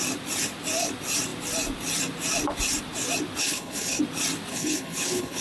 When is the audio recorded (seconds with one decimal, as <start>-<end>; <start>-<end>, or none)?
0.0-3.4; 4.0-4.5